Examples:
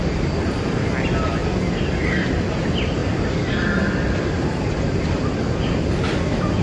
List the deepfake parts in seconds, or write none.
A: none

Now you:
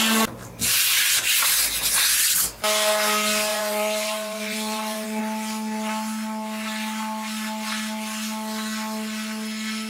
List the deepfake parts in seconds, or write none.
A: 3.5-5.2 (vocoder, BigVGAN v2)

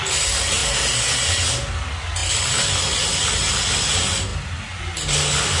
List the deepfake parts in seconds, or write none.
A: none

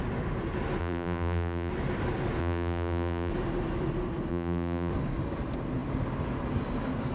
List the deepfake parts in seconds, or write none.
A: 0.8-1.7 (vocoder, BigVGAN v2); 2.4-3.3; 4.3-4.9

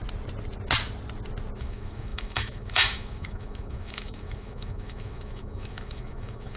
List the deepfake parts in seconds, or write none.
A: 1.6-6.6 (autoencoder, DAC-VAE)

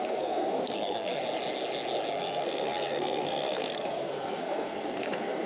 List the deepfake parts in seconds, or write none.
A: 0.0-1.2 (codec, SNAC); 2.1-5.5